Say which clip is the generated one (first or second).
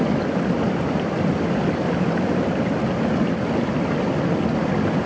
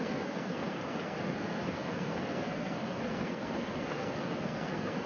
second